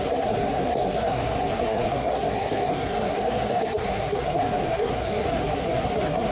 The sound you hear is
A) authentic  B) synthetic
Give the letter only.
B